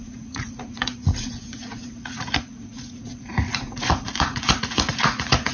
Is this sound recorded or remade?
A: remade